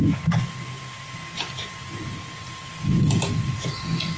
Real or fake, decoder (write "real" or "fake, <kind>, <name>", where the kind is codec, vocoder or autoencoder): real